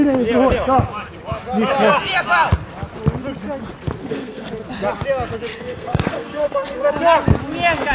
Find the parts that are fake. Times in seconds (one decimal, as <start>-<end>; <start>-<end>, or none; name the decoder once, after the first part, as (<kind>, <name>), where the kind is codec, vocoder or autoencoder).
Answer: 4.0-4.5 (codec, SNAC); 5.5-6.9